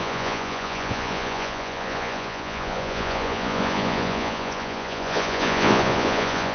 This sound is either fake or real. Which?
fake